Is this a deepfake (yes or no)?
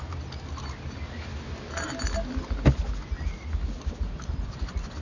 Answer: no